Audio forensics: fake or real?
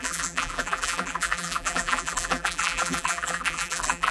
fake